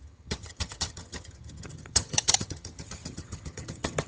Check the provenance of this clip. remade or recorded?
remade